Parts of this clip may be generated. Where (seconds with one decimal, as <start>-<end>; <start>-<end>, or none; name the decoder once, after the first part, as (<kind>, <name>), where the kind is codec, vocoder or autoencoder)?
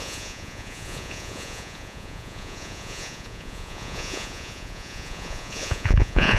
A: 0.0-6.4 (vocoder, Vocos)